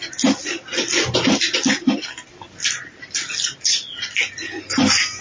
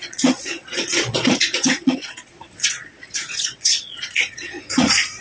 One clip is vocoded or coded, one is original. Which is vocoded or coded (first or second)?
second